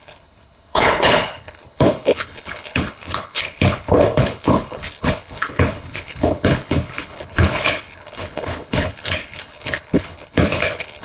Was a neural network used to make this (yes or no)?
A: yes